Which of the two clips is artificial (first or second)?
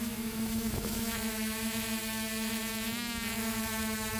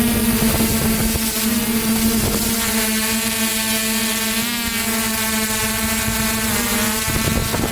first